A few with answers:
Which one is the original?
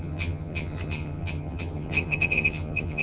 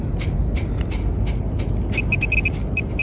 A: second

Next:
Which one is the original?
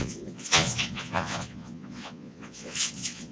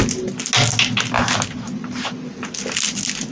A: second